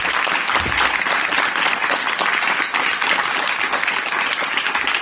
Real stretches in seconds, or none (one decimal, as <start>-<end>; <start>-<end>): 0.0-5.0